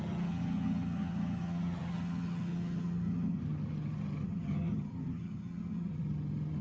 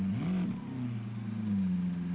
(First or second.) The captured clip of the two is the second